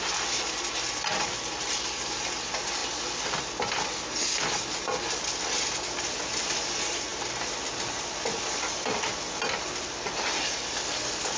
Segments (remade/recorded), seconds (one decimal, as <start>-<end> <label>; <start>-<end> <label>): 0.0-11.4 recorded